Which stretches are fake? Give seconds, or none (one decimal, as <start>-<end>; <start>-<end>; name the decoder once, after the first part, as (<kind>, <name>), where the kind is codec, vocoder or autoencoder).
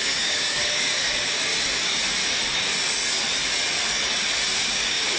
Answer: 0.0-1.5 (codec, DAC); 4.6-5.2